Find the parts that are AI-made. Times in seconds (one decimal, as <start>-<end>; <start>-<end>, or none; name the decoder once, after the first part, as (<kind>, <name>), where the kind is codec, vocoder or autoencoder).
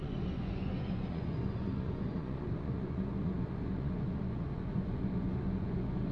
0.0-6.1 (vocoder, Vocos)